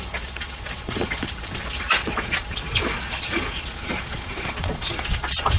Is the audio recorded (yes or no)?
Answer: no